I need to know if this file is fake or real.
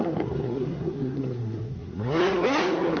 fake